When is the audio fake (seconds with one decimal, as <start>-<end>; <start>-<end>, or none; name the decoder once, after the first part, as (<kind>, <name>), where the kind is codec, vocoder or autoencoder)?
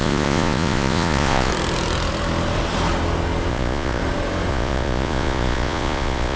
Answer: 0.0-1.5 (vocoder, Vocos); 3.5-4.0; 4.5-6.4